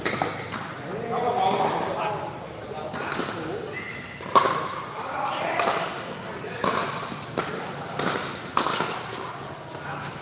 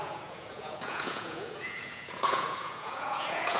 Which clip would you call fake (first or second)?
second